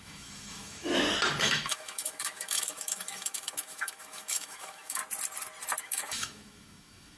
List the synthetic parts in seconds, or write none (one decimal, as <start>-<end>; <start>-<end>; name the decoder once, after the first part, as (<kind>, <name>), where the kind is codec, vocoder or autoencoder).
0.0-0.9 (autoencoder, DAC-VAE); 1.4-5.0; 5.8-7.2